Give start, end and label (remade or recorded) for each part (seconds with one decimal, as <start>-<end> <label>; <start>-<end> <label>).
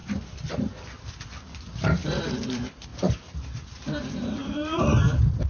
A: 0.0-2.5 recorded; 2.5-2.9 remade; 2.9-4.1 recorded; 4.1-5.5 remade